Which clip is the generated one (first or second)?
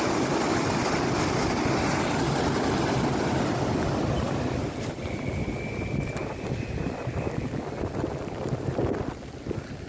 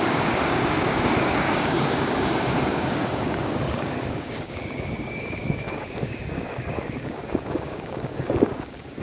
second